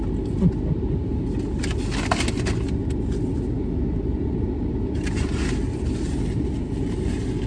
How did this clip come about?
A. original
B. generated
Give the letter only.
A